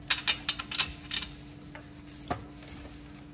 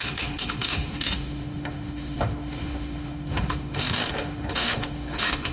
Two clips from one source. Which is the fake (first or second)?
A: second